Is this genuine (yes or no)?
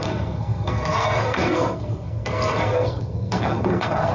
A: no